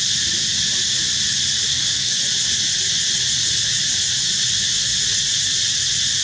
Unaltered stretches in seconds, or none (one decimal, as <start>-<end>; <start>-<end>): 0.0-1.7; 2.2-6.2